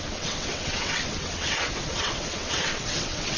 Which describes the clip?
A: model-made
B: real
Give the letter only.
A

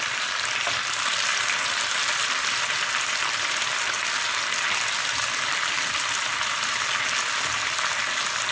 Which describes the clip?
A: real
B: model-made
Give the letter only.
A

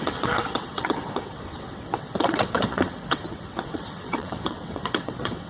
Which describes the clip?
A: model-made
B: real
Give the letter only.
A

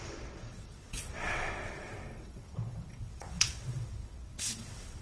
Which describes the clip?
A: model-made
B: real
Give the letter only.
A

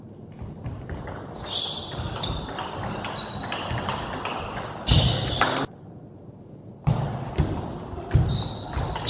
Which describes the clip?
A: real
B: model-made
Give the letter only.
A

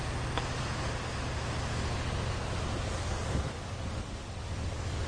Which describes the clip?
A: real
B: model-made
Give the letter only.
A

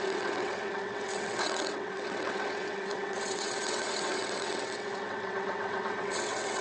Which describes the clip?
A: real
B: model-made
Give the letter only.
B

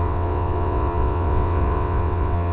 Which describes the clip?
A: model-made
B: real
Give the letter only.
A